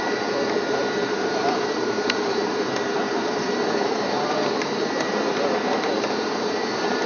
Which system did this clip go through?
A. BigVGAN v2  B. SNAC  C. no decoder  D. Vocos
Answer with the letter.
A